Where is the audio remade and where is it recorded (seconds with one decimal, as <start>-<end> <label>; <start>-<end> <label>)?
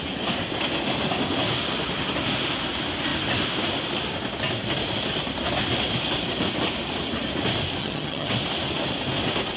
0.0-7.8 recorded; 7.8-8.3 remade; 8.3-9.6 recorded